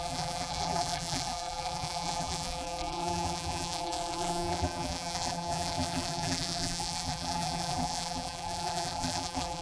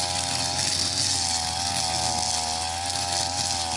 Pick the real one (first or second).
second